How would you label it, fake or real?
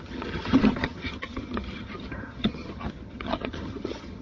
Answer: fake